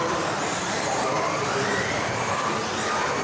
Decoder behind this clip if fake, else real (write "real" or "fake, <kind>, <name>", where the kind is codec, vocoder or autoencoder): fake, vocoder, BigVGAN v2